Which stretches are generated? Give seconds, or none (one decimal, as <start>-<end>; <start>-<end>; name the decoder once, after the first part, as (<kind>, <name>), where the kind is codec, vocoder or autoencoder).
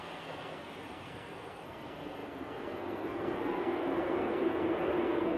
0.0-5.4 (codec, SNAC)